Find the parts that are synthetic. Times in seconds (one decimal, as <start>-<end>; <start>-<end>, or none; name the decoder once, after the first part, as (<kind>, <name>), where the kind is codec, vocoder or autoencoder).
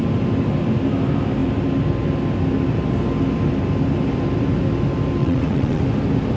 5.2-5.8 (vocoder, WaveNeXt)